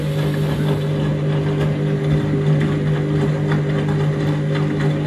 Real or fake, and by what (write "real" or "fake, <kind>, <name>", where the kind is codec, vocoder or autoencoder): real